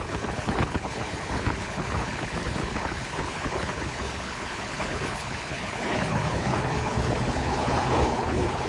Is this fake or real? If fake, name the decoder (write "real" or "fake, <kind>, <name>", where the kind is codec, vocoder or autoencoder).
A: fake, codec, HILCodec